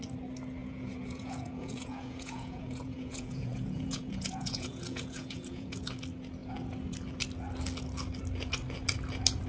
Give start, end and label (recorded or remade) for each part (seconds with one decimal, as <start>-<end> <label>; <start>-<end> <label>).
0.0-0.6 recorded; 0.6-5.8 remade; 5.8-9.5 recorded